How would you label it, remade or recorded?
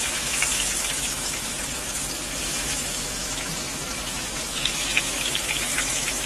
remade